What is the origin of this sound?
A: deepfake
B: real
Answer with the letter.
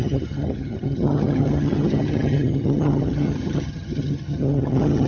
A